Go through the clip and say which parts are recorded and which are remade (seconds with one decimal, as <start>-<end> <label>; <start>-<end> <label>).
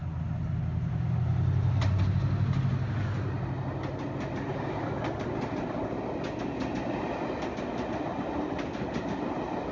0.0-9.7 recorded